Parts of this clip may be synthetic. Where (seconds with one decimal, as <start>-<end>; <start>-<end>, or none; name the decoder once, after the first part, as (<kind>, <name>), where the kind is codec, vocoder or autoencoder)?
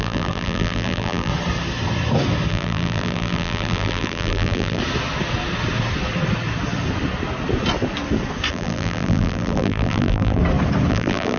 0.0-1.3 (vocoder, BigVGAN v2); 2.5-4.8; 8.5-10.4; 10.9-11.4